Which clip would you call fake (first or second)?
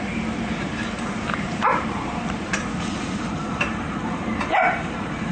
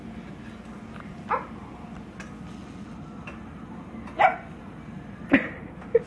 first